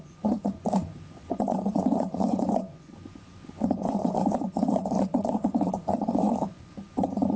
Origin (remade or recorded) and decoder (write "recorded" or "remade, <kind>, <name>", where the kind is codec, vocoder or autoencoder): remade, vocoder, Vocos